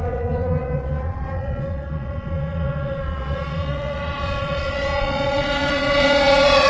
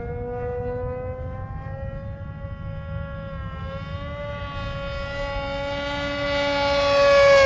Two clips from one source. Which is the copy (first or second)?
first